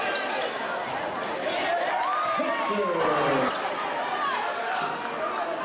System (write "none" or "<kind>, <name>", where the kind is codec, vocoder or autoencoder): none